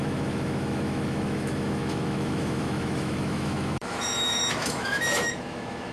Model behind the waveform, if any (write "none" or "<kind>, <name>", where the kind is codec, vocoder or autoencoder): autoencoder, DAC-VAE